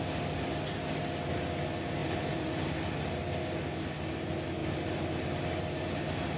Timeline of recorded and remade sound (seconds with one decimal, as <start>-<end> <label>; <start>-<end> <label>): 0.0-2.0 recorded; 2.0-2.7 remade; 2.7-4.6 recorded; 4.6-5.2 remade; 5.2-6.4 recorded